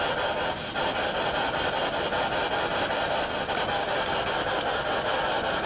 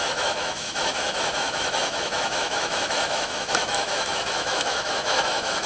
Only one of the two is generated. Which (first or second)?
second